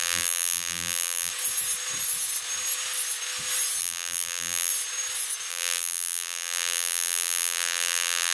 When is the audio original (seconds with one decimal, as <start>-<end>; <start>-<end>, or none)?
1.3-3.8; 4.7-5.5